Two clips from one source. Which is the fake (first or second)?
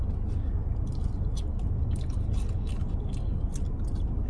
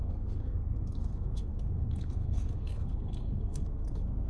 second